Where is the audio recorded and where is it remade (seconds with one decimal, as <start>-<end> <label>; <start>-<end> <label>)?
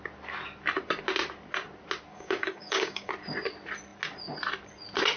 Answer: 0.0-2.1 recorded; 2.1-3.1 remade; 3.1-5.2 recorded